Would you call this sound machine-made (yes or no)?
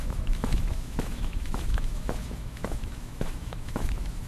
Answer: yes